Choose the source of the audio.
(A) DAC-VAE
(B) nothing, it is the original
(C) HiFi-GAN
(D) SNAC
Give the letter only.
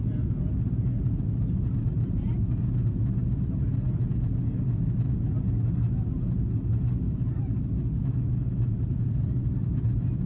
B